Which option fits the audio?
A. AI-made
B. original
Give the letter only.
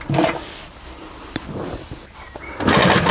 B